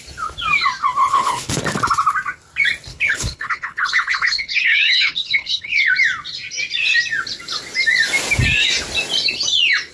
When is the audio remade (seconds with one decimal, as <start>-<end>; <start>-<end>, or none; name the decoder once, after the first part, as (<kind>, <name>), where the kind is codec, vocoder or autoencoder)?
1.0-1.5 (codec, HILCodec); 2.9-5.9

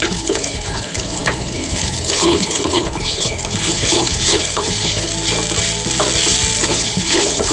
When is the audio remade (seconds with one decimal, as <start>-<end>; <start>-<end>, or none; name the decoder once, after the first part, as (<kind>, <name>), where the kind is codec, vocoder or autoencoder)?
0.0-5.1 (codec, HILCodec); 6.6-7.5

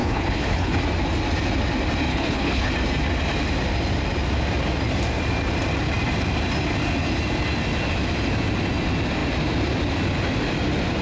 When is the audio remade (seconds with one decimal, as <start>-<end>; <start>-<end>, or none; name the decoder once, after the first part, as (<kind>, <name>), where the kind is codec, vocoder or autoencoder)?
0.0-0.8 (codec, HILCodec); 2.1-2.7

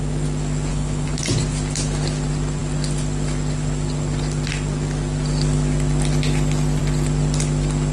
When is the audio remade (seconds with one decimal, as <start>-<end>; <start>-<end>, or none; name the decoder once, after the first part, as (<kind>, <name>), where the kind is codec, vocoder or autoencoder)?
0.7-1.2 (codec, HILCodec)

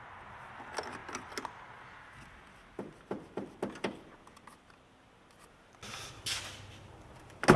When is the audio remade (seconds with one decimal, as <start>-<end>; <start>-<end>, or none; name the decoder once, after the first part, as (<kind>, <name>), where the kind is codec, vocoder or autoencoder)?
none